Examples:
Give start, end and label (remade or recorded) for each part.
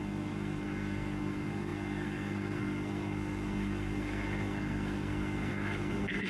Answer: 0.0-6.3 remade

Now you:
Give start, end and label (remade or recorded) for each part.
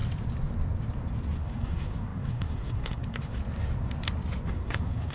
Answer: 0.0-1.4 recorded; 1.4-3.4 remade; 3.4-4.5 recorded; 4.5-5.1 remade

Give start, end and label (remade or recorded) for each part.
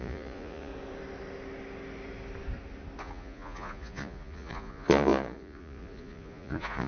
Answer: 0.0-0.7 remade; 0.7-3.0 recorded; 3.0-6.9 remade